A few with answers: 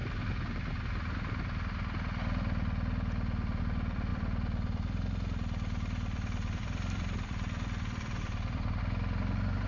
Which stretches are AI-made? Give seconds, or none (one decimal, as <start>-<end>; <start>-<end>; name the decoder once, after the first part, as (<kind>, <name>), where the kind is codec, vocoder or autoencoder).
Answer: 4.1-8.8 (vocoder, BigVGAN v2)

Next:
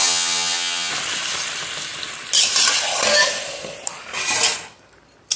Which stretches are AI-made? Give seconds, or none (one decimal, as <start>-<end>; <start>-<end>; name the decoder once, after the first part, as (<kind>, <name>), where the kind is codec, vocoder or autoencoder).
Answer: 0.0-0.9 (vocoder, HiFi-GAN)

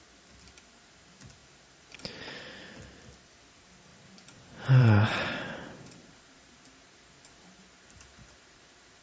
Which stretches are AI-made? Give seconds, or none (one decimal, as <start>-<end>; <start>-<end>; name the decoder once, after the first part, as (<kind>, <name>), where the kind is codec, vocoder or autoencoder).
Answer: 3.9-9.0 (vocoder, BigVGAN v2)